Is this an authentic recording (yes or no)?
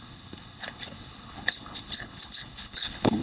no